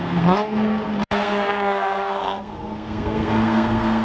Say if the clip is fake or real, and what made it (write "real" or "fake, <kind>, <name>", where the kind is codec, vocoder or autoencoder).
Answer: fake, codec, SNAC